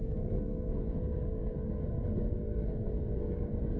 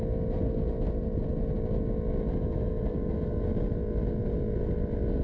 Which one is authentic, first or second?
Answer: second